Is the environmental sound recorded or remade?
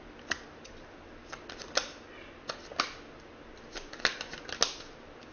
recorded